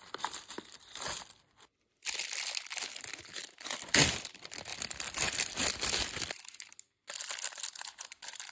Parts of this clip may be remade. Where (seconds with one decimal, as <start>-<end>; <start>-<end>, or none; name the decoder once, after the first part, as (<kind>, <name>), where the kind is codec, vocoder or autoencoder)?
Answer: 4.7-5.6 (vocoder, BigVGAN v2)